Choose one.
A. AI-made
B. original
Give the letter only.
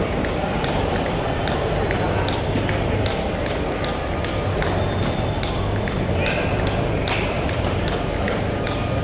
B